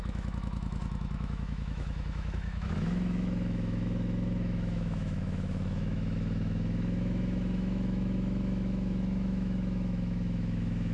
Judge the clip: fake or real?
fake